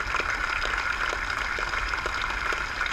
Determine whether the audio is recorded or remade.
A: recorded